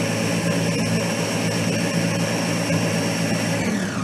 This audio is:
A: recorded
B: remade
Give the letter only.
A